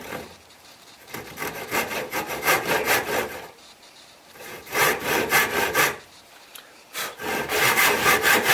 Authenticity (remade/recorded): remade